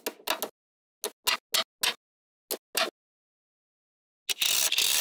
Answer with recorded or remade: recorded